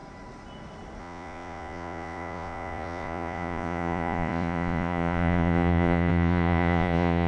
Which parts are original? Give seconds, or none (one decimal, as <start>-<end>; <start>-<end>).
0.0-1.0